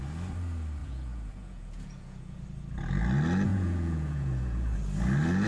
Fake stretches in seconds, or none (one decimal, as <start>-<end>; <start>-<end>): 0.8-2.4; 3.5-4.8